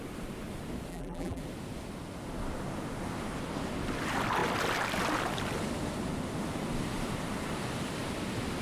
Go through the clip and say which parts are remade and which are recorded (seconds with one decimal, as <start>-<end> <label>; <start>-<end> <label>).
0.0-0.9 recorded; 0.9-1.4 remade; 1.4-8.6 recorded